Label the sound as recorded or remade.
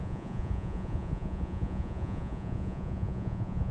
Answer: remade